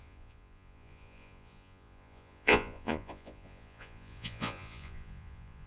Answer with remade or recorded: remade